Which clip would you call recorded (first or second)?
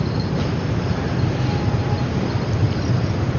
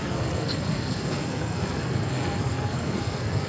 first